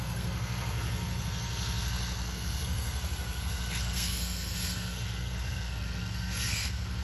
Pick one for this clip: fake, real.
fake